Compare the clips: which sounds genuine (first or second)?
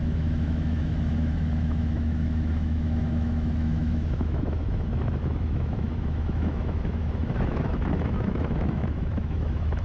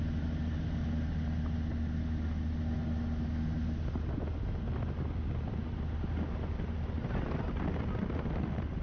second